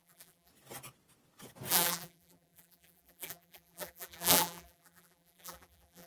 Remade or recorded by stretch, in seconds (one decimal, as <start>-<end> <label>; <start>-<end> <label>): 0.0-0.5 remade; 0.5-1.7 recorded; 1.7-6.1 remade